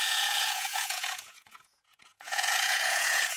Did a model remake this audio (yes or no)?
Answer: yes